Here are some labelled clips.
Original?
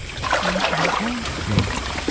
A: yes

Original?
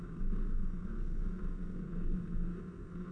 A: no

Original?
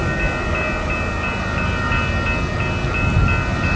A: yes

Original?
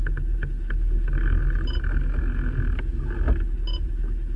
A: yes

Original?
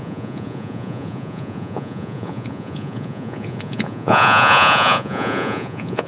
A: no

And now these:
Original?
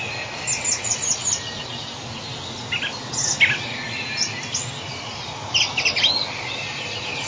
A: yes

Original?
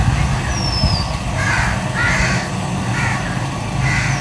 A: yes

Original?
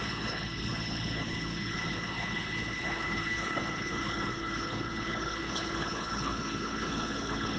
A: no